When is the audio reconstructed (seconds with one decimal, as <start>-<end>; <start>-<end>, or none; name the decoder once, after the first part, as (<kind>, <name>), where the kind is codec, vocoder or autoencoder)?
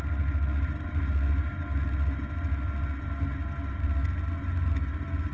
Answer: none